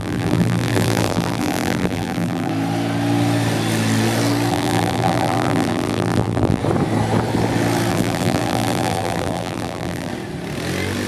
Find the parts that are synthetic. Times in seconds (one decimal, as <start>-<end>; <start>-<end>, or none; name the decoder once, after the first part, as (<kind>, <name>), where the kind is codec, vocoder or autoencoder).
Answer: 0.0-2.5 (vocoder, BigVGAN v2); 4.5-6.6; 7.9-10.1